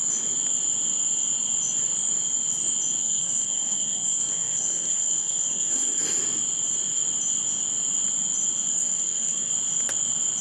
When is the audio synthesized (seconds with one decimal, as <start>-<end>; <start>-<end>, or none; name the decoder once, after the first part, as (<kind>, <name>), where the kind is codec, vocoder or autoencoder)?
3.0-6.2 (codec, SNAC); 8.7-9.5